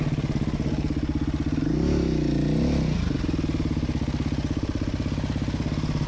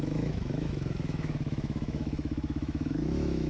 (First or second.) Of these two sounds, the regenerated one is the second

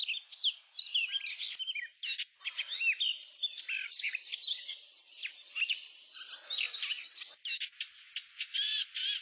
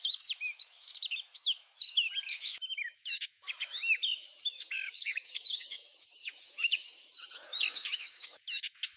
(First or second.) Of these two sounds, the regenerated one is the second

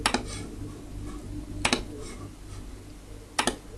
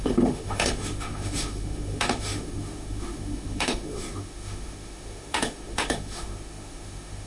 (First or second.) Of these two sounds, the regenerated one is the second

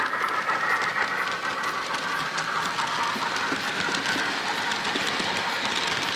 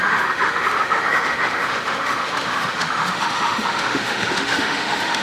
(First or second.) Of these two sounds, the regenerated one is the second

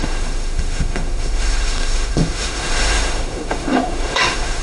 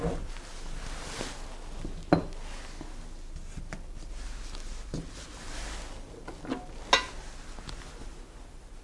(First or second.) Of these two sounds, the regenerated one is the first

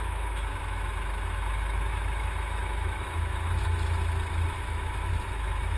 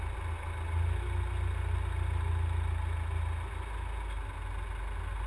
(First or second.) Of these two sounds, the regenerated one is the first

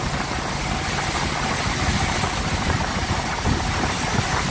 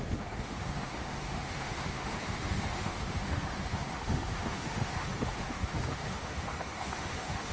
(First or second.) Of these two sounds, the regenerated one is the second